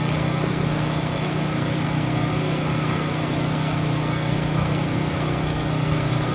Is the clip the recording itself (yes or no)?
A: no